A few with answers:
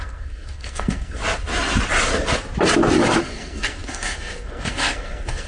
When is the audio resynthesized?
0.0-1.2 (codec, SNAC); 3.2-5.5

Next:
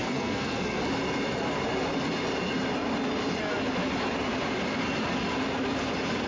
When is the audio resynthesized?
0.0-0.8 (codec, SNAC)

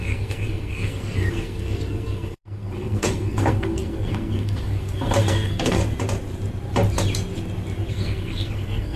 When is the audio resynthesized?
0.0-5.8 (codec, SNAC); 7.9-9.0

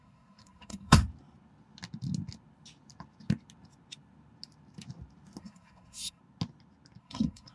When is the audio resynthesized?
0.0-1.0 (codec, SNAC); 5.4-6.2; 7.0-7.5